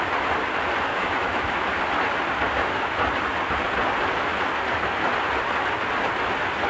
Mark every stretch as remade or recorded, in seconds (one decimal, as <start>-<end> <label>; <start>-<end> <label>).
0.0-0.9 recorded; 0.9-1.5 remade; 1.5-6.7 recorded